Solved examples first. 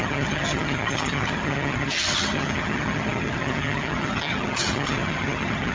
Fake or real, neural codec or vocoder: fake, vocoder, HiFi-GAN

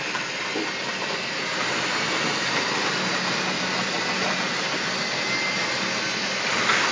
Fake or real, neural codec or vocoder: real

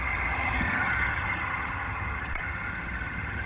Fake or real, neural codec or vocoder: fake, vocoder, HiFi-GAN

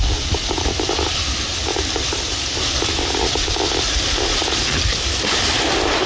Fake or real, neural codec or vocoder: real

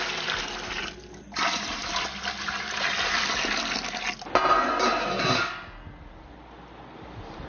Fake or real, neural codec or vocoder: real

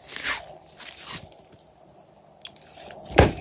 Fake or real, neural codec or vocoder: real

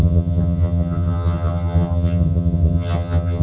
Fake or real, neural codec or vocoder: fake, vocoder, HiFi-GAN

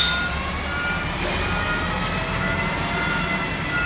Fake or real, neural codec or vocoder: real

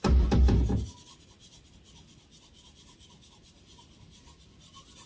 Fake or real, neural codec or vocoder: real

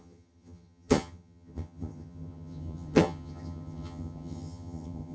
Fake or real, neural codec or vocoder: fake, vocoder, HiFi-GAN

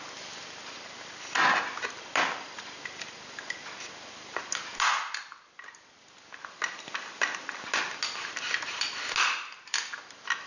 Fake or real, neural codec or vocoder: real